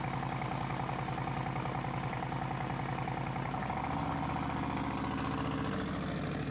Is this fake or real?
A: real